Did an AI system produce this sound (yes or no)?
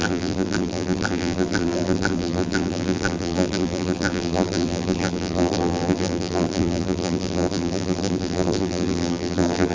yes